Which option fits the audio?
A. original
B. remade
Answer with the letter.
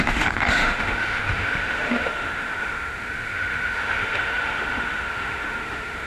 B